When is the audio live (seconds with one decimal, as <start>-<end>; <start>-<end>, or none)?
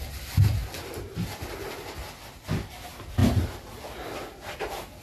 0.0-0.6; 1.2-3.2; 3.8-5.0